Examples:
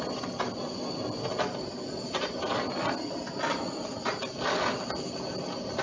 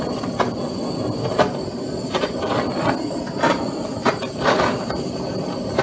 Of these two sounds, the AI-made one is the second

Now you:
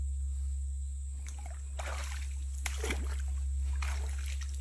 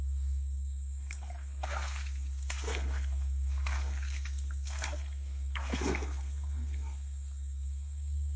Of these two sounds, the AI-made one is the second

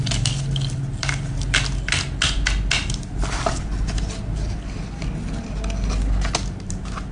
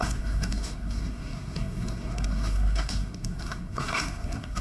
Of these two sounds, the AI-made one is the second